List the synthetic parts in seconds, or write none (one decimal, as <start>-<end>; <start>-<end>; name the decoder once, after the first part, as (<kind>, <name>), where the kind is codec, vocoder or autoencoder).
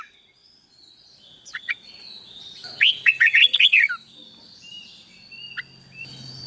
0.4-3.9 (vocoder, Vocos)